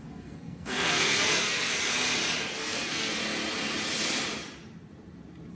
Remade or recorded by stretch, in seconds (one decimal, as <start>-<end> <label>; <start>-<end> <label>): 0.0-1.7 remade; 1.7-2.5 recorded; 2.5-3.2 remade; 3.2-5.5 recorded